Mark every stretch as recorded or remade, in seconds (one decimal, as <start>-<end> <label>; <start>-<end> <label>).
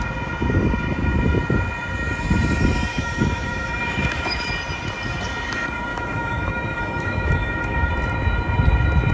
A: 0.0-2.9 recorded; 2.9-4.5 remade; 4.5-5.9 recorded; 5.9-7.9 remade; 7.9-9.1 recorded